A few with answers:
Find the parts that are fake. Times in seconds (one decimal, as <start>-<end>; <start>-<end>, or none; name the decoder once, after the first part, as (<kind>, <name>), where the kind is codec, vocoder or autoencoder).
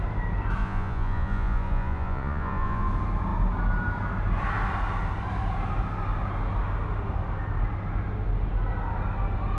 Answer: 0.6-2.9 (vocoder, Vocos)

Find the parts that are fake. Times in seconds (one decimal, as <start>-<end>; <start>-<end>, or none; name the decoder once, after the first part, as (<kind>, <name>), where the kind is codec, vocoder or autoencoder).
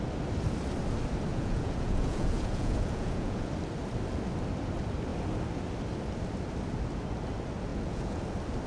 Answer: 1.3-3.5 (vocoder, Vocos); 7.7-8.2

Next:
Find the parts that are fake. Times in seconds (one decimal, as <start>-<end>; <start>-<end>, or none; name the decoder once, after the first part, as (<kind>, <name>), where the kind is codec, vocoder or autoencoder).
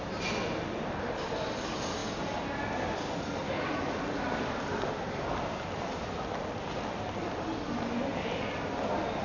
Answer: none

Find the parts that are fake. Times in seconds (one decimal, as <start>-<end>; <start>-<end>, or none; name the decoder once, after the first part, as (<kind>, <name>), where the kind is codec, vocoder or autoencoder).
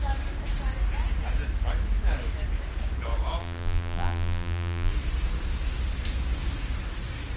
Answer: 3.4-4.9 (vocoder, BigVGAN v2)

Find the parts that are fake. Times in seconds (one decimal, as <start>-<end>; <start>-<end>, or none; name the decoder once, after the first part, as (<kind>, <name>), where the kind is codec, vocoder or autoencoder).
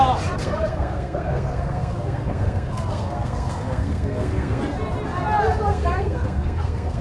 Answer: 0.4-4.6 (codec, SNAC); 5.7-7.0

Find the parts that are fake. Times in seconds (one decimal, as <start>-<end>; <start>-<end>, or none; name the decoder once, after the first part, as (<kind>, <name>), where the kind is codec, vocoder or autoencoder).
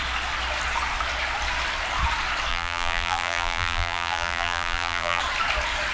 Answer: 2.5-5.2 (vocoder, BigVGAN v2)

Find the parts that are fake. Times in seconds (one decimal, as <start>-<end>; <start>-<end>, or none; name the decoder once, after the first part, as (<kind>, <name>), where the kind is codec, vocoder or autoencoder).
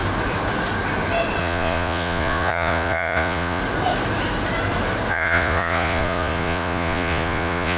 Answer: 1.4-3.6 (vocoder, Vocos); 5.1-7.8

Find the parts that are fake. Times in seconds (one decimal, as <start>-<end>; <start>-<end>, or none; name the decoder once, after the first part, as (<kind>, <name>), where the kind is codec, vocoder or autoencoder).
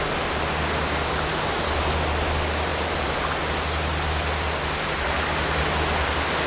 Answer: none